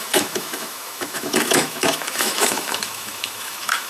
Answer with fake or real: fake